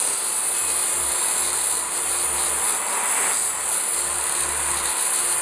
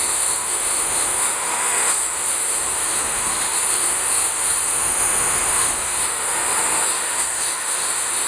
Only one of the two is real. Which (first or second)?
first